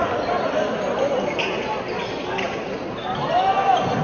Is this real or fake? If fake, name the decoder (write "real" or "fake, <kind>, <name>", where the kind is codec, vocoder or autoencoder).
real